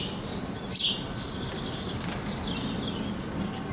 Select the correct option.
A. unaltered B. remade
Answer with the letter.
A